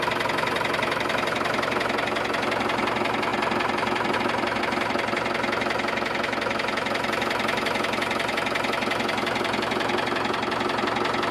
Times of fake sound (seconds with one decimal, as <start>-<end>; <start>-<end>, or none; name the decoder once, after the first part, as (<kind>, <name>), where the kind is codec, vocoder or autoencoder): 3.3-4.6 (vocoder, BigVGAN v2)